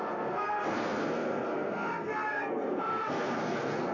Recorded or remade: remade